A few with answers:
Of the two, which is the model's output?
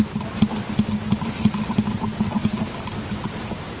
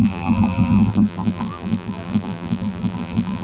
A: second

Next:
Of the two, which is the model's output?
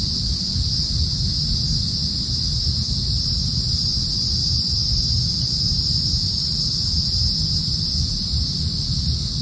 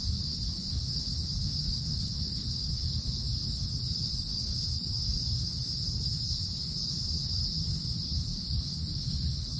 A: second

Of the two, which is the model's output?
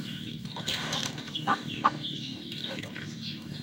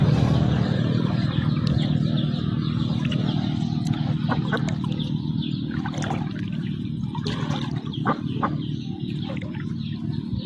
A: first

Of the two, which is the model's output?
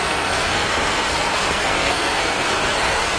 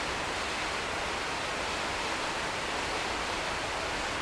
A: first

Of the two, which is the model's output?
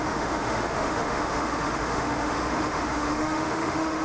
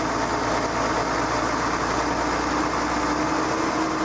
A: first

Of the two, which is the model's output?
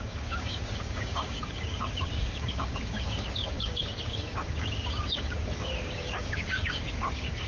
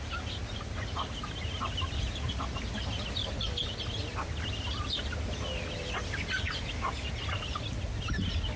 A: first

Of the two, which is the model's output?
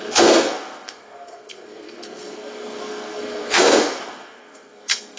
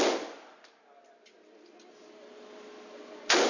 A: first